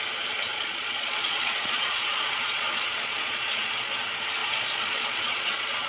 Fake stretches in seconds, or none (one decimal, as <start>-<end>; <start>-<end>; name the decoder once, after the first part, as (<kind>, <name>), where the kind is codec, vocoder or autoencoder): 0.5-4.0 (vocoder, Vocos); 4.4-5.9